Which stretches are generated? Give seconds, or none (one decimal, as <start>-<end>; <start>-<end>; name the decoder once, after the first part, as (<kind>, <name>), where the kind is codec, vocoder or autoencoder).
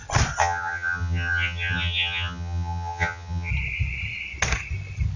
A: 0.4-3.5 (vocoder, HiFi-GAN)